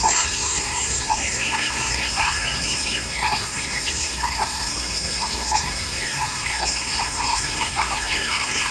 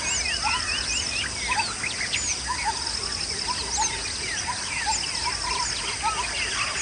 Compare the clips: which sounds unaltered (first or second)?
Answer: second